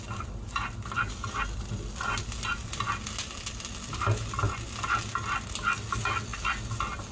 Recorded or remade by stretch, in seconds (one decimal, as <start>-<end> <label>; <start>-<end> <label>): 0.0-7.1 recorded